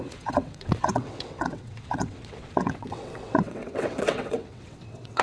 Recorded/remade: remade